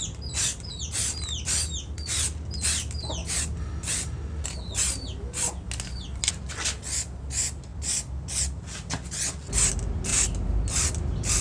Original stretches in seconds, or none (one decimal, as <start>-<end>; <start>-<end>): 0.0-11.4